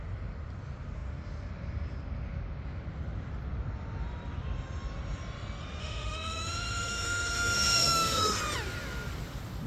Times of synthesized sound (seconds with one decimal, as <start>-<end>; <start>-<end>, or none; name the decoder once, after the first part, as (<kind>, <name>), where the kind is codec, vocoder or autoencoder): 5.8-8.4 (autoencoder, DAC-VAE)